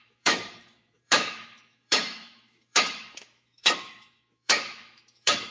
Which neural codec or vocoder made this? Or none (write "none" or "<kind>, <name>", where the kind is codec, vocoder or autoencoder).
autoencoder, DAC-VAE